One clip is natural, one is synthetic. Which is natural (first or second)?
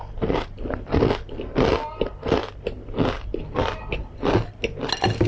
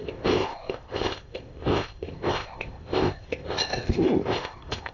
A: first